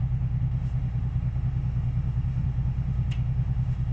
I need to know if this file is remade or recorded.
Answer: remade